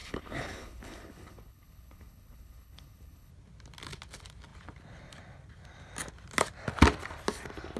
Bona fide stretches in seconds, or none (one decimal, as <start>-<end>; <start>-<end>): 3.3-7.8